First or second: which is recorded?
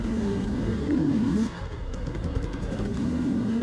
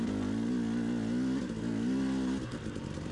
second